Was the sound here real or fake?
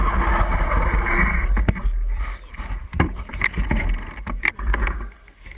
real